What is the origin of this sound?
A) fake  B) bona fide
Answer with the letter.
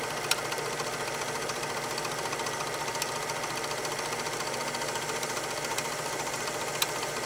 B